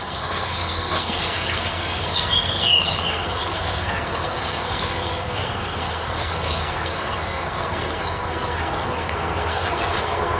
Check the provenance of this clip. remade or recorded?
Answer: remade